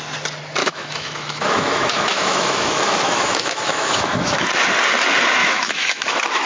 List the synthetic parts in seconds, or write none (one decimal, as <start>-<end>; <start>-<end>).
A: 0.6-4.5; 5.4-6.5